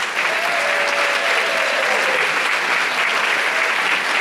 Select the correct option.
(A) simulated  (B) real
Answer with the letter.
B